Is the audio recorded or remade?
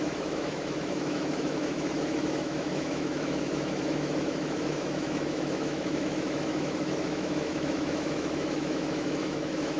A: remade